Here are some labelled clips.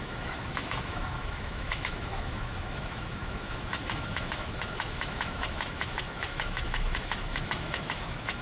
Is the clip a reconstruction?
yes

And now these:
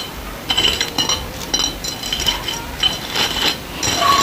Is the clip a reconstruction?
no